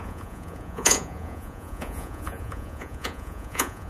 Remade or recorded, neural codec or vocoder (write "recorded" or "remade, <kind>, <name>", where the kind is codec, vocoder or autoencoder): remade, vocoder, Vocos